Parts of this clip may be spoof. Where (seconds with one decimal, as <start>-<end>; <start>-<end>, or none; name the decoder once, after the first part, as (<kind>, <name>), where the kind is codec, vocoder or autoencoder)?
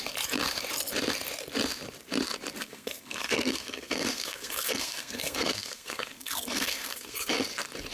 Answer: 2.6-7.3 (codec, SNAC)